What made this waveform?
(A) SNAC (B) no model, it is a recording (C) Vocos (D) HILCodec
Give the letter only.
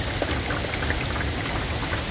B